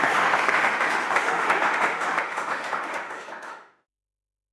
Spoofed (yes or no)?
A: yes